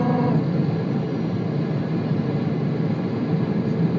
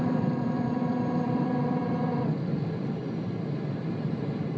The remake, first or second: second